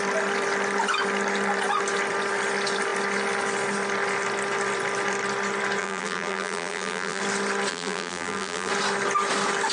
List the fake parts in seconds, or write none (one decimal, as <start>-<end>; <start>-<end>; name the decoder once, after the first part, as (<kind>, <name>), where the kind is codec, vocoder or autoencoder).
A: 5.8-7.2 (vocoder, BigVGAN v2); 7.7-8.7